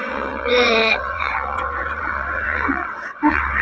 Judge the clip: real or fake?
fake